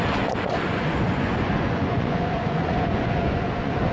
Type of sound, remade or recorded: remade